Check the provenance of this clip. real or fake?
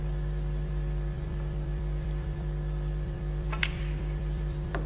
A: fake